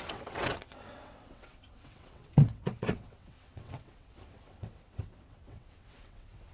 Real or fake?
fake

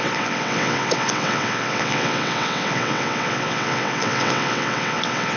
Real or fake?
fake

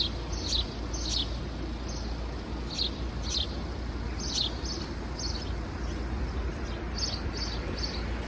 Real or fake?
real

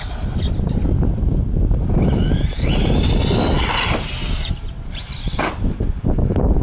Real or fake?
real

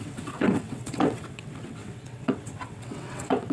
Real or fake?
fake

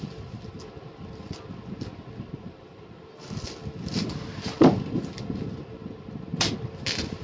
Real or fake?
real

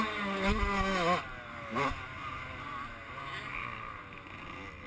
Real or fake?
real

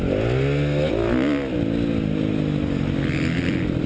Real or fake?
real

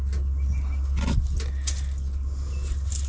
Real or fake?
real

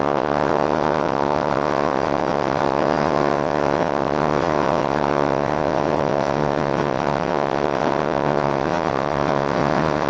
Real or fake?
fake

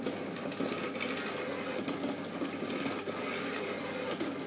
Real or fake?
real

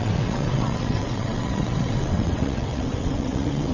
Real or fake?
fake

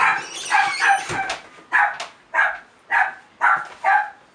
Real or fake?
real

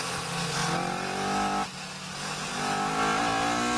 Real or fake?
real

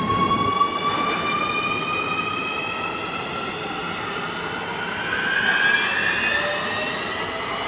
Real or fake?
real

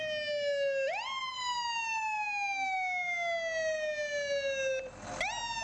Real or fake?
real